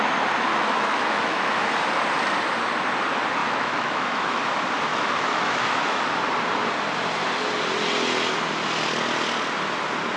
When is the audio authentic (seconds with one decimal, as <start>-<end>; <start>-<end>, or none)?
0.0-0.5; 1.7-3.4; 4.4-4.9; 6.0-10.2